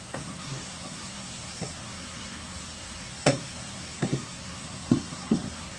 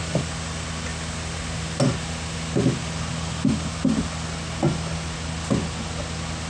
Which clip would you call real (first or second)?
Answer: second